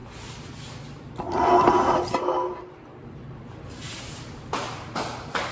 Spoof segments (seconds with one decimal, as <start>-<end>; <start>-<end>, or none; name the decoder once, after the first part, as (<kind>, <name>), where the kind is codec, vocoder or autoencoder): none